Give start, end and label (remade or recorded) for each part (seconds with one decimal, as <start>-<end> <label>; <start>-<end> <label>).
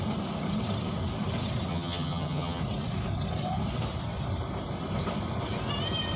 0.0-1.7 recorded; 1.7-2.6 remade; 2.6-6.2 recorded